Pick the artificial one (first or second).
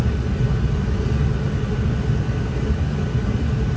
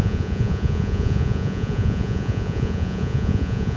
second